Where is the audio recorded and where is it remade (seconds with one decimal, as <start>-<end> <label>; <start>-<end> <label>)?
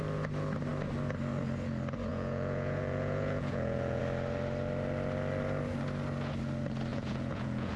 0.0-2.1 recorded; 2.1-4.0 remade; 4.0-6.9 recorded; 6.9-7.8 remade